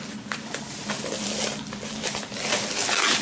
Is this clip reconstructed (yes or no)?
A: no